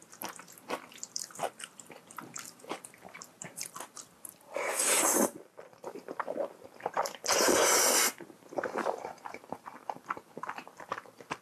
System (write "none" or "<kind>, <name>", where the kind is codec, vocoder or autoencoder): vocoder, BigVGAN v2